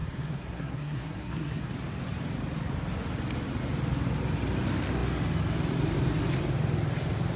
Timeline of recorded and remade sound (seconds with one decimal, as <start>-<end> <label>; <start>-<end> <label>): 0.0-1.7 remade; 1.7-7.4 recorded